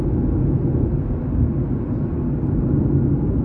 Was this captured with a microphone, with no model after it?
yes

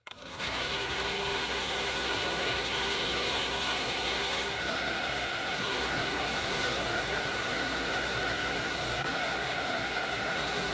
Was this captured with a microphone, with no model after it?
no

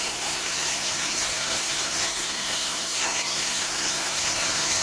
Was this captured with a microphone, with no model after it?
no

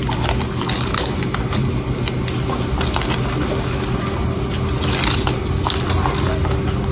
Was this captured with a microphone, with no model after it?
yes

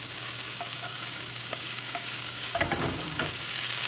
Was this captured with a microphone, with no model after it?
no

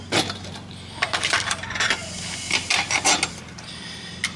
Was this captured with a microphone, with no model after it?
yes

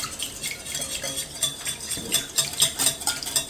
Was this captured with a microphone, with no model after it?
yes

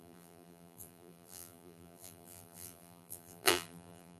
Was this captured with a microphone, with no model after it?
no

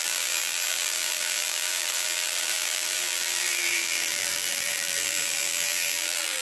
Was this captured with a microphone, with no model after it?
no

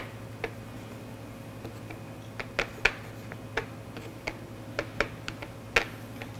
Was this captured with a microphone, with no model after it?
yes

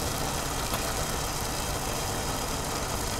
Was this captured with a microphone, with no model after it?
yes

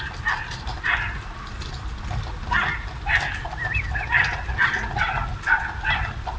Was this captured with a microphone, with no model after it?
yes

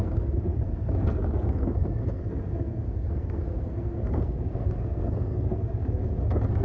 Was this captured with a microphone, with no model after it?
no